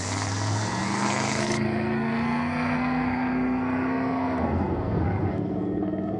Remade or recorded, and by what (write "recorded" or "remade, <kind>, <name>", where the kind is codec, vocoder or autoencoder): remade, codec, SNAC